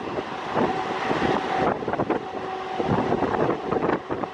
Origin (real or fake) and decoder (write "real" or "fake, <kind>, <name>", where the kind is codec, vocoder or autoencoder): real